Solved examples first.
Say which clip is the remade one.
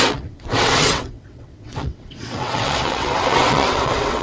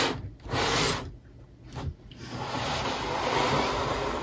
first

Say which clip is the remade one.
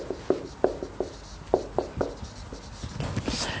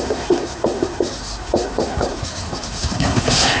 second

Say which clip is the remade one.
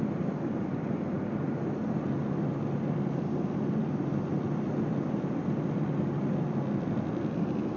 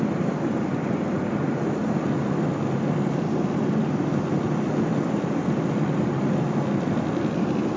second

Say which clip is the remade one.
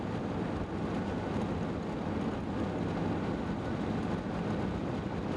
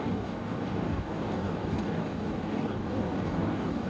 second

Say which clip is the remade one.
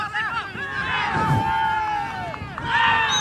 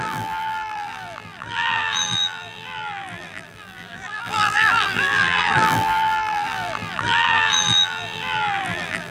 second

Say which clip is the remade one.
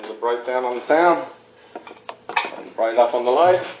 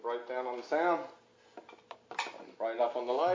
first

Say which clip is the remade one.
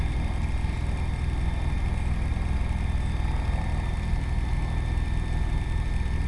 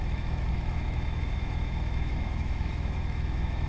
second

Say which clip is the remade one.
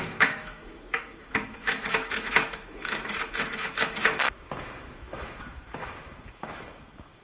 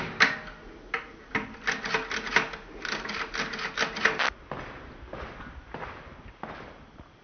first